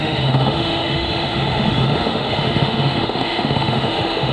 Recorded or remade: remade